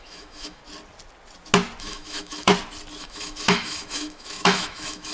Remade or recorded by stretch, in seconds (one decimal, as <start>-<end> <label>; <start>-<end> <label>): 0.0-0.6 remade; 0.6-1.8 recorded; 1.8-2.5 remade; 2.5-3.0 recorded; 3.0-5.1 remade